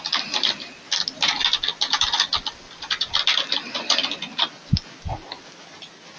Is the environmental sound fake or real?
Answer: real